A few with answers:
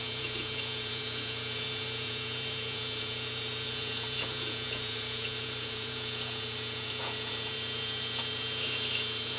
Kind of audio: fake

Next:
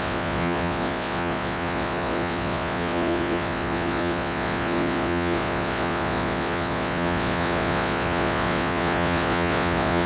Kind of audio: fake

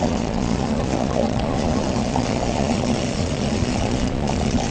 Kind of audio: fake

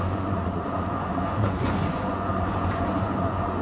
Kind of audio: fake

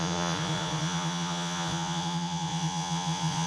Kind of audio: fake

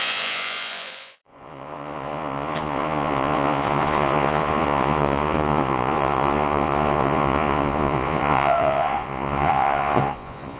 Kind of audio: fake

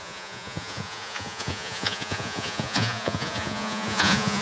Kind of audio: fake